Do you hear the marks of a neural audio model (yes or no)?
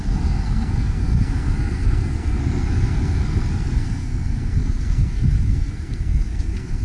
yes